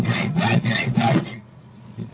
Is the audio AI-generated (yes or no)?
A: yes